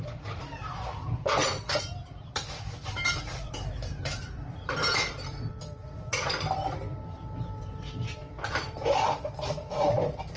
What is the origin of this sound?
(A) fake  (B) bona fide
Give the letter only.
A